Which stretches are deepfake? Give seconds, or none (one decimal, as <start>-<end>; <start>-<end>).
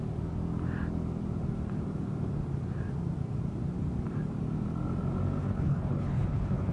5.4-6.7